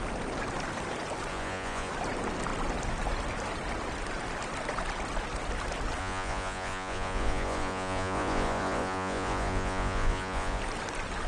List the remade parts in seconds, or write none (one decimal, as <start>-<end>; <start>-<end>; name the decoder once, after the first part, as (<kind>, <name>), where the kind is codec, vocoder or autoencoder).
1.3-1.9 (vocoder, Vocos); 6.0-10.6